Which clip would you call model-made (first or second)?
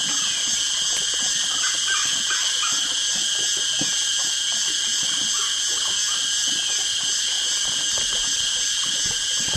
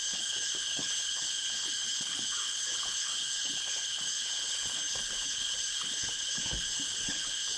second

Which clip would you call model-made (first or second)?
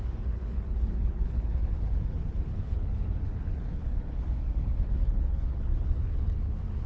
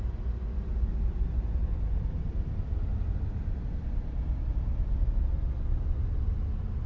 first